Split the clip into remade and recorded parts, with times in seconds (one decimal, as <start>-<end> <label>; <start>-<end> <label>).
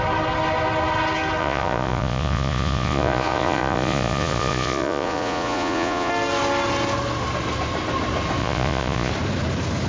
0.0-1.4 recorded; 1.4-6.1 remade; 6.1-8.4 recorded; 8.4-9.1 remade; 9.1-9.9 recorded